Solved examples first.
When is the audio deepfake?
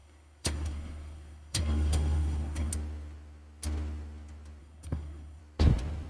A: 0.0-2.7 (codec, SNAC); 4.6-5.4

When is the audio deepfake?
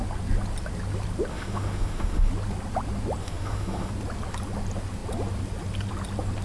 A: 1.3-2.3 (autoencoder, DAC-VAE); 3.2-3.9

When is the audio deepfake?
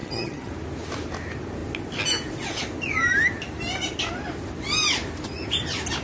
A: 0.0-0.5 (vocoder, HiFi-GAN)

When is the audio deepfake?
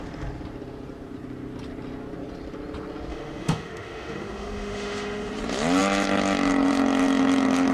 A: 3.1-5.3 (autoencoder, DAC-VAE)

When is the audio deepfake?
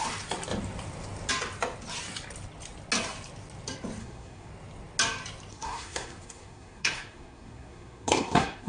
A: 4.0-4.5 (codec, SNAC); 5.5-8.7